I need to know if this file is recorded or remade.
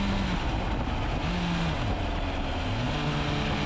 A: recorded